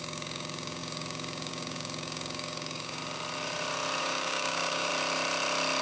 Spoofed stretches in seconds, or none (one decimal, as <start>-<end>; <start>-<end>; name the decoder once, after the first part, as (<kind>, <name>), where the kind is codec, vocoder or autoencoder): 0.0-3.0 (codec, DAC); 4.0-4.9